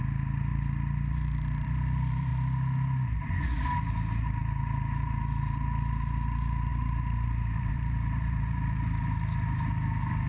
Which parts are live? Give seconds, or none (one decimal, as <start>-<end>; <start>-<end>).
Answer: 2.3-4.4